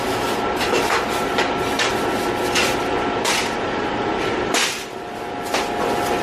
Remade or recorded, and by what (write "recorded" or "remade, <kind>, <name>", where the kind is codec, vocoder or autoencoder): recorded